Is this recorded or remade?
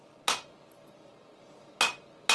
recorded